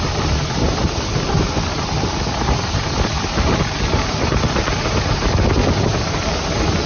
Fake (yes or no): no